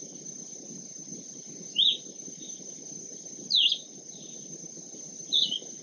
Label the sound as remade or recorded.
recorded